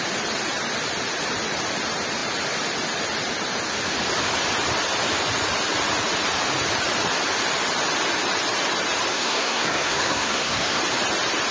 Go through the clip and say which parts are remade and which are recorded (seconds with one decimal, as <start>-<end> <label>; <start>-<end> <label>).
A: 0.0-9.1 recorded; 9.1-10.8 remade; 10.8-11.5 recorded